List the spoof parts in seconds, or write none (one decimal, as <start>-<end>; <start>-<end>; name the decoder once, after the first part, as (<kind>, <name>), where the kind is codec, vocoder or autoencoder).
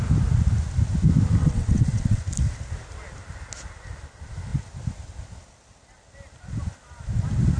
1.4-2.2 (vocoder, WaveNeXt)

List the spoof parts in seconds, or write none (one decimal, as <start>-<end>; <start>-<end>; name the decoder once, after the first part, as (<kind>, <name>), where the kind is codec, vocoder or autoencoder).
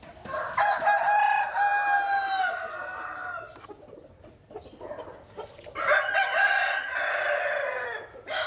none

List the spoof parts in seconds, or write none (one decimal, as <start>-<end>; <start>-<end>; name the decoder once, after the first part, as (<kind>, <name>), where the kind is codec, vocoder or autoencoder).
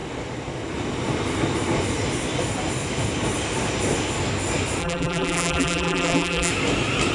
4.8-6.5 (vocoder, BigVGAN v2)